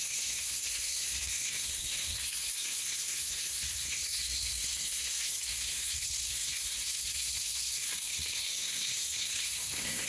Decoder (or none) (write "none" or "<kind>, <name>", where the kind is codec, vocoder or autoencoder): codec, SNAC